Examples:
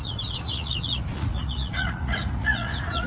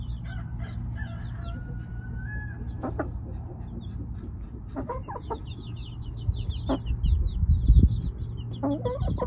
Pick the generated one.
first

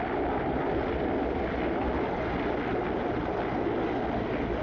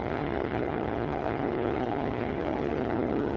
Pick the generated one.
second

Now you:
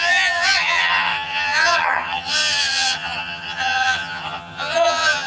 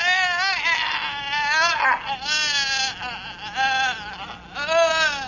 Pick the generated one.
first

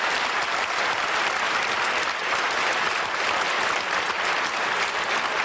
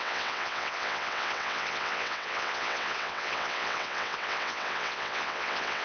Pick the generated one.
second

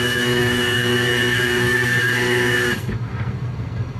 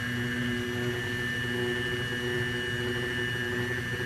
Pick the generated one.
first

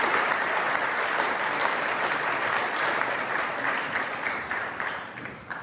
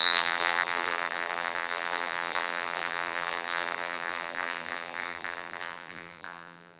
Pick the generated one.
second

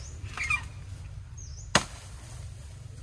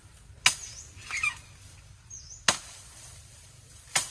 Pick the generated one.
second